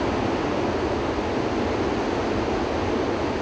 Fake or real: real